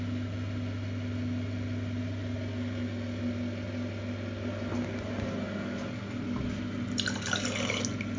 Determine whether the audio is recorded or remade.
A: recorded